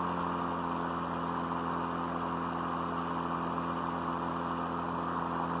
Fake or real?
real